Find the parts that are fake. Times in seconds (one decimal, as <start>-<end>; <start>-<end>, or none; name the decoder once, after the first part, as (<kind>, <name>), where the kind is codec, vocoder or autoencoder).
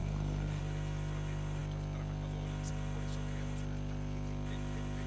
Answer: 0.0-0.6 (codec, SNAC)